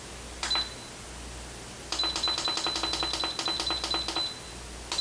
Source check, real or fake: real